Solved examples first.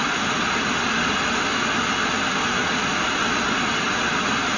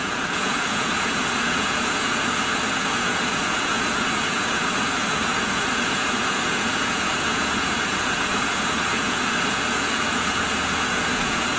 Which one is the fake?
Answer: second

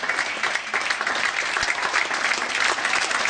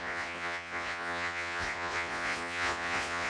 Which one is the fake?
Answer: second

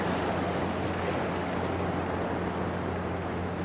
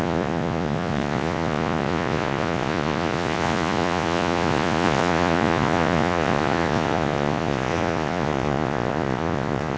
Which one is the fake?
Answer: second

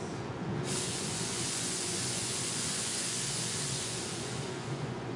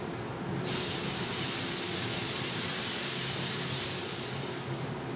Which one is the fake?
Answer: first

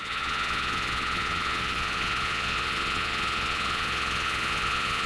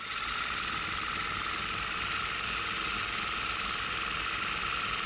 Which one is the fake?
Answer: first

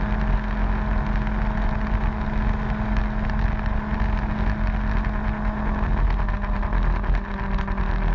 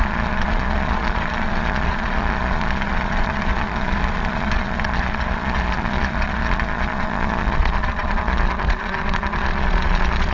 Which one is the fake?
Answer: second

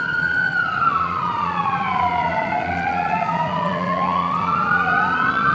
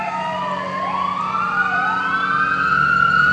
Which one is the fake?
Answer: first